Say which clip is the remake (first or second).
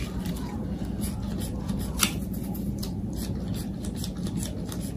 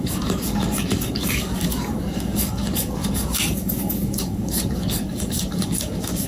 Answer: second